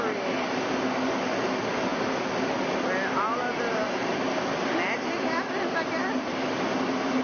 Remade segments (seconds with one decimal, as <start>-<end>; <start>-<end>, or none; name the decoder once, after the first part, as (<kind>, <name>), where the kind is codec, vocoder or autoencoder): none